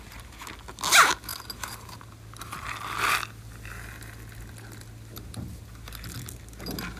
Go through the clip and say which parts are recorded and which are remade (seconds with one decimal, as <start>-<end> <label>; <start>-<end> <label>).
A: 0.0-7.0 recorded